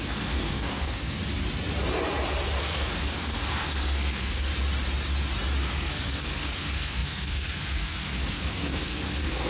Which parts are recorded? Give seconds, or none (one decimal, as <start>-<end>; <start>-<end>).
1.2-2.6; 4.5-5.6